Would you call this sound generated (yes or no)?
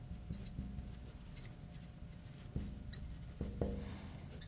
no